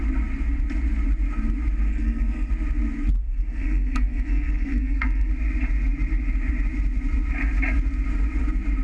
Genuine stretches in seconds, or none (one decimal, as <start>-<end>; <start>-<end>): 0.0-1.9; 2.5-3.2; 5.3-8.8